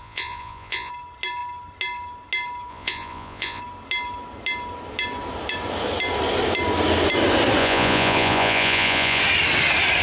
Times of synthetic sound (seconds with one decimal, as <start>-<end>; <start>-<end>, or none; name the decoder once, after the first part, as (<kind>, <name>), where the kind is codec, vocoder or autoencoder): 0.0-0.9 (vocoder, Vocos); 2.7-3.6; 7.6-9.2

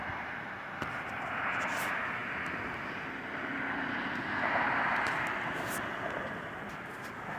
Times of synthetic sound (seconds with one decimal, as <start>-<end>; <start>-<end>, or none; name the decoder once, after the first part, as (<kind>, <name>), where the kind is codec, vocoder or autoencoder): none

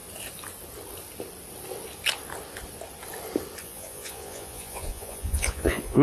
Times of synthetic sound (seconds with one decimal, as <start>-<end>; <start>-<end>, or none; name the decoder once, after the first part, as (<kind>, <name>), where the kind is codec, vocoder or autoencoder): 3.6-6.0 (vocoder, Vocos)

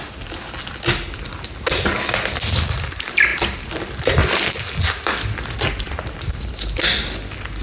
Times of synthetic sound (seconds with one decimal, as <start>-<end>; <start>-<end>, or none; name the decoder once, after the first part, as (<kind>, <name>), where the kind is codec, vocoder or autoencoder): none

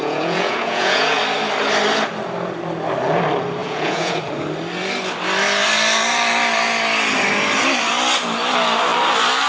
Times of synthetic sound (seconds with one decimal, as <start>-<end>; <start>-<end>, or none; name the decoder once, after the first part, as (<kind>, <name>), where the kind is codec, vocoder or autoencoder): 0.0-1.2 (vocoder, Vocos); 3.6-4.2

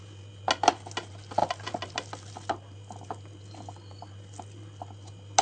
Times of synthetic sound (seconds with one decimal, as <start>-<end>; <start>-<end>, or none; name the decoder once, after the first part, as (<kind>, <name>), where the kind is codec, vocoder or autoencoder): none

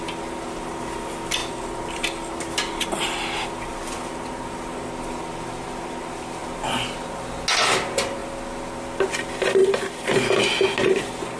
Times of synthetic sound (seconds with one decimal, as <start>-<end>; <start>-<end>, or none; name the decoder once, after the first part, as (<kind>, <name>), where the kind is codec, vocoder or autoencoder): none

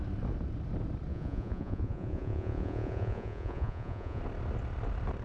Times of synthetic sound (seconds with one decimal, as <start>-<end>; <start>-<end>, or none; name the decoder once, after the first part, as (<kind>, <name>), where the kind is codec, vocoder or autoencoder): 1.1-4.2 (vocoder, Vocos)